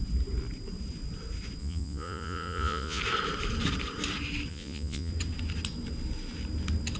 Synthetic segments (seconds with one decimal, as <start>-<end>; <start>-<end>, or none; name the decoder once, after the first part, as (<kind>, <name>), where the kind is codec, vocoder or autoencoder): 1.6-3.0 (vocoder, Vocos); 4.5-5.1